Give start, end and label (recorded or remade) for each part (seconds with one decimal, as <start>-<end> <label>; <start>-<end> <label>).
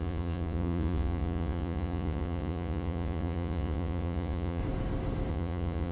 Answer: 0.0-4.6 remade; 4.6-5.3 recorded; 5.3-5.9 remade